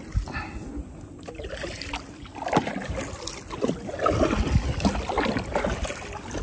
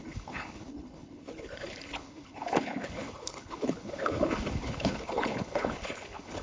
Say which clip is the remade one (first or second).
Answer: second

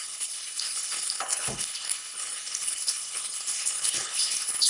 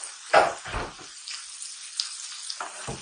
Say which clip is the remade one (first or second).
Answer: first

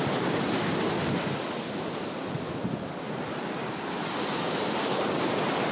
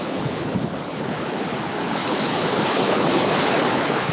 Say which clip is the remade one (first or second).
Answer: second